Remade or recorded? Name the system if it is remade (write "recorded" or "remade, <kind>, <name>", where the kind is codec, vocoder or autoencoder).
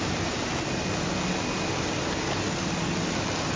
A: recorded